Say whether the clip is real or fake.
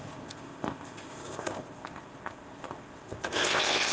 fake